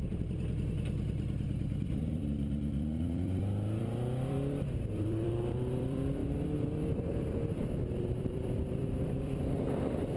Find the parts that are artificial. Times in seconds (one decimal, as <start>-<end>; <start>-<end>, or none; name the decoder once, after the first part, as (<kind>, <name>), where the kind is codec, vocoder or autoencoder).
0.0-10.2 (vocoder, BigVGAN v2)